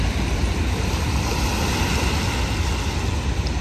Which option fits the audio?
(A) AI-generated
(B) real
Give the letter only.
B